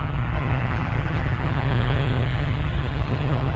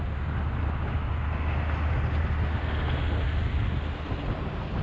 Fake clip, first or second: first